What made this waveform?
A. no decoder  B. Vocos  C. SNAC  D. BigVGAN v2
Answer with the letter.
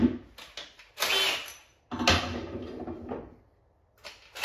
A